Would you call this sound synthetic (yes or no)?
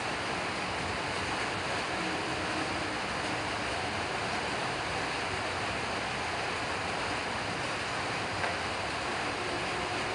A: no